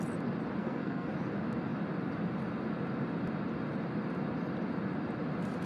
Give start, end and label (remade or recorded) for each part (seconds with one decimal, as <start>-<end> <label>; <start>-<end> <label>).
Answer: 0.0-0.6 recorded; 0.6-1.1 remade; 1.1-5.7 recorded

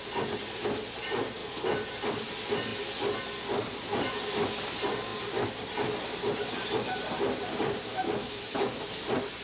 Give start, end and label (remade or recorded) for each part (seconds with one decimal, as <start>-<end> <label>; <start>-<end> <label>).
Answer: 0.0-7.9 recorded; 7.9-8.7 remade; 8.7-9.4 recorded